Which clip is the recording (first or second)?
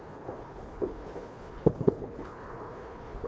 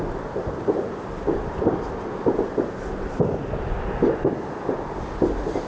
second